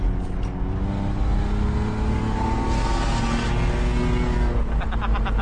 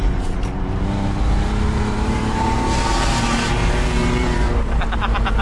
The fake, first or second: second